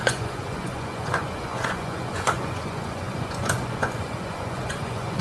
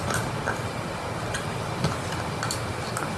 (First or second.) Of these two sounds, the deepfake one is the first